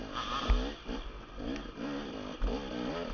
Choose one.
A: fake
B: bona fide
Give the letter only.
B